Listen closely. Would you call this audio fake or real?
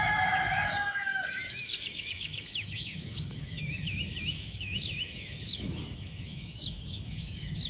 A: fake